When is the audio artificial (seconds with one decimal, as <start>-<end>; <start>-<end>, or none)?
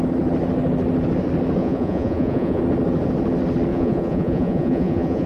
1.6-2.6; 3.7-5.3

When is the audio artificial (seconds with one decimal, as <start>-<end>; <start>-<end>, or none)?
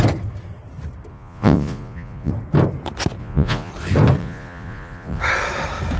1.1-2.3; 3.2-3.7; 4.2-5.2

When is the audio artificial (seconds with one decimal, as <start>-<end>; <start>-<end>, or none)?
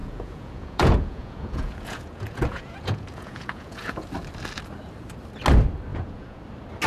0.0-4.1; 5.9-6.4